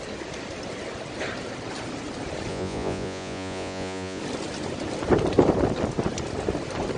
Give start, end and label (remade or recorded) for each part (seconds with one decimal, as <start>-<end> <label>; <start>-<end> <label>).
0.0-2.5 recorded; 2.5-4.2 remade; 4.2-7.0 recorded